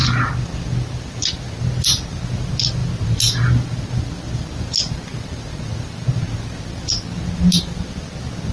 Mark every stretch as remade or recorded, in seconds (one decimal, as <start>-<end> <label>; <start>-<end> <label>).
0.0-8.5 recorded